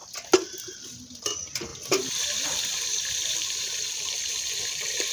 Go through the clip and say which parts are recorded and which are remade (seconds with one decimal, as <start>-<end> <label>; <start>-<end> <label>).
0.0-1.7 recorded; 1.7-5.1 remade